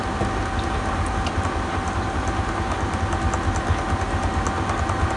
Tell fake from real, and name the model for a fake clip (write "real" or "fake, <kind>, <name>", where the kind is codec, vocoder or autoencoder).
real